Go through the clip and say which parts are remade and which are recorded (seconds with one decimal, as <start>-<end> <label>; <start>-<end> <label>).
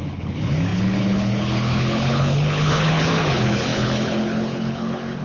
0.0-5.2 remade